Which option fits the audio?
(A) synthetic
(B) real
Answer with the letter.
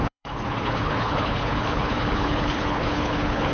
A